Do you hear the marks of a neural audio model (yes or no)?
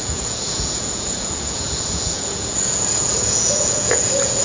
yes